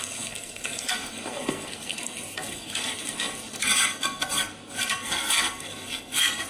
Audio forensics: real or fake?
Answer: fake